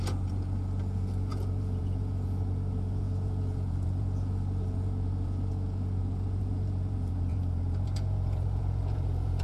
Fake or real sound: fake